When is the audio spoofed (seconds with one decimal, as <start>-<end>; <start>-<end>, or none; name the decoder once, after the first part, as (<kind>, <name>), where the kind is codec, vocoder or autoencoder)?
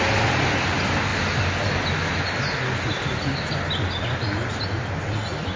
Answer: none